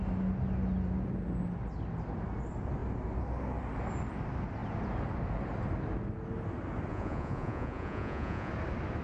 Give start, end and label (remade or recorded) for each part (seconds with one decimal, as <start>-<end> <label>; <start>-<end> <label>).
0.0-6.9 recorded; 6.9-8.5 remade; 8.5-9.0 recorded